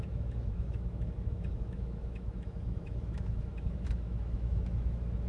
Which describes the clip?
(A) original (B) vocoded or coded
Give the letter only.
B